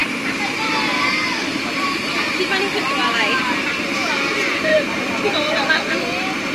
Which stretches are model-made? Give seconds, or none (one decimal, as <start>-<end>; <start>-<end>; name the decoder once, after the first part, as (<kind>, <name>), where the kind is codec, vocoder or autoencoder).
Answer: 0.0-0.7 (vocoder, BigVGAN v2); 1.4-2.0; 3.0-5.9